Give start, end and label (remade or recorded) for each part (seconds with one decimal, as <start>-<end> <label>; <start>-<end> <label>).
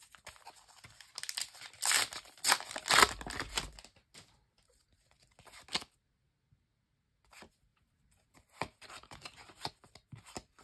0.0-7.7 recorded; 7.7-9.7 remade; 9.7-10.6 recorded